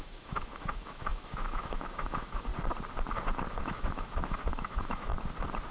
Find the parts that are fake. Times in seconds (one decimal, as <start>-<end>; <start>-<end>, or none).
0.0-2.5; 3.5-5.1